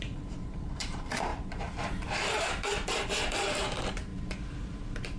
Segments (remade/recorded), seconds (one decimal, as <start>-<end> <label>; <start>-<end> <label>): 0.0-5.2 remade